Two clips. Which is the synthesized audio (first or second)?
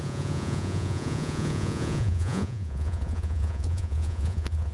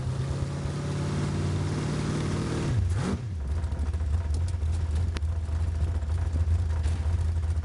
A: first